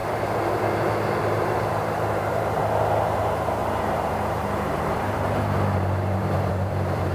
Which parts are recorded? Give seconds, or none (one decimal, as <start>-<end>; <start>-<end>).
0.0-0.8; 2.6-3.2